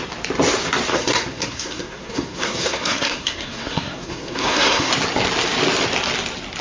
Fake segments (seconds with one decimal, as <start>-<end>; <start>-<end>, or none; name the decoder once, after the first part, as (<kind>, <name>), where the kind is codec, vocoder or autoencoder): 0.9-4.9 (codec, SNAC)